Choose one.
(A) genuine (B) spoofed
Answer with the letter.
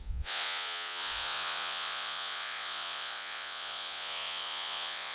B